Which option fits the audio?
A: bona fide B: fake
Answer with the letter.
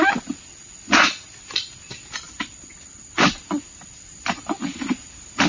A